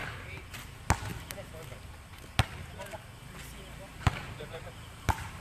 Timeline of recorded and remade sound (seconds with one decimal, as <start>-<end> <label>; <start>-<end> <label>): 0.0-0.5 remade; 0.5-3.9 recorded; 3.9-4.7 remade; 4.7-5.4 recorded